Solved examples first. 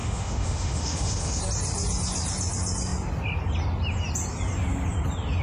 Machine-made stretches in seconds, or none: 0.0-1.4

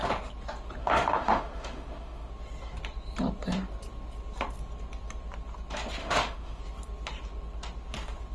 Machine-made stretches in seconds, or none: 0.8-2.3; 6.0-6.6

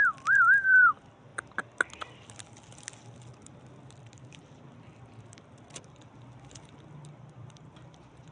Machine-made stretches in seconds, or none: 0.0-1.3; 3.3-8.3

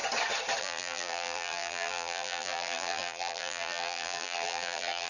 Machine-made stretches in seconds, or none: 0.6-5.1

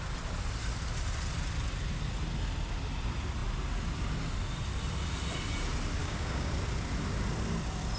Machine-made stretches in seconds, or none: 6.0-6.5

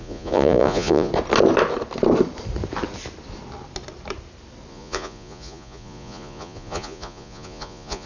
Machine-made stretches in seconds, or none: 0.0-1.1; 4.7-8.1